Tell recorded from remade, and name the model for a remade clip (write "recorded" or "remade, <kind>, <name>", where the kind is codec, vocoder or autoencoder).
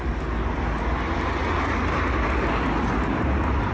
recorded